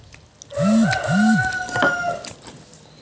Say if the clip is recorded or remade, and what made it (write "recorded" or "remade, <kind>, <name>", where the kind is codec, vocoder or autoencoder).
recorded